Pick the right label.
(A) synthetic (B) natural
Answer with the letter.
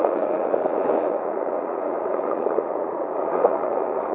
A